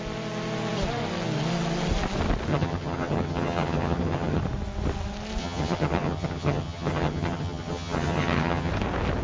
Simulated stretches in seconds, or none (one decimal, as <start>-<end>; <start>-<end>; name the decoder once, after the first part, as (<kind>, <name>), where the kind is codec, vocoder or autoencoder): 2.5-4.4 (vocoder, HiFi-GAN); 5.4-8.7

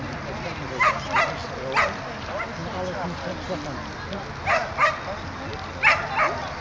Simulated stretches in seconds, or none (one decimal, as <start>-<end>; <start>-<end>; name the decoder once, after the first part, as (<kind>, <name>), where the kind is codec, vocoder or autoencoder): none